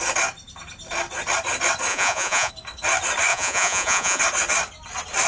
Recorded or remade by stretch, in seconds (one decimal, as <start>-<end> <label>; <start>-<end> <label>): 0.0-1.9 recorded; 1.9-2.5 remade; 2.5-3.3 recorded; 3.3-4.2 remade; 4.2-5.3 recorded